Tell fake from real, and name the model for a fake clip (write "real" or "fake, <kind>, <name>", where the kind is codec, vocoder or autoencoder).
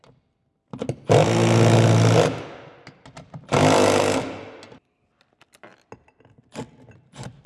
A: real